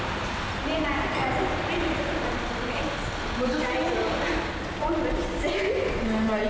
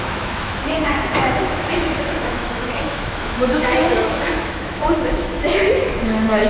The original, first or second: first